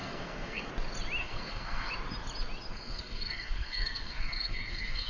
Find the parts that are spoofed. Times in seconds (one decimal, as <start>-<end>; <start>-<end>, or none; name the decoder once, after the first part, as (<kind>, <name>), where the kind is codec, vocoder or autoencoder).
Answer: 0.0-0.7 (codec, SNAC); 1.2-1.9; 2.7-5.1